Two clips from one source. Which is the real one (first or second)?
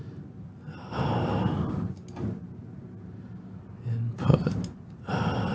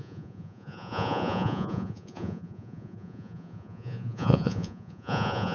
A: first